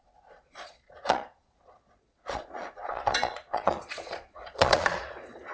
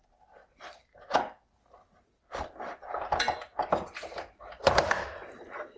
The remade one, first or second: first